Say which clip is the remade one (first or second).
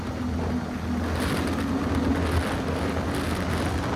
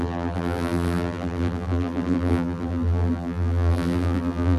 second